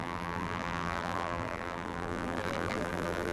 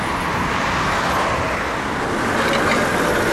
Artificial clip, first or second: first